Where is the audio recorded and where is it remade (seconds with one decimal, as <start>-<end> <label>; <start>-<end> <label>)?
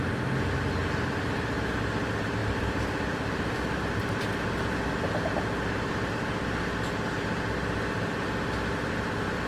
0.0-2.4 recorded; 2.4-4.3 remade; 4.3-9.5 recorded